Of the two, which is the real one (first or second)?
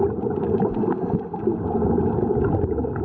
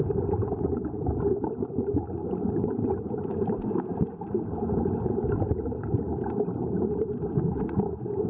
first